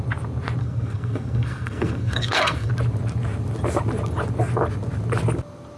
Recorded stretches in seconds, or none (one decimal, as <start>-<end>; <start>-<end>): 0.0-0.6; 2.7-5.8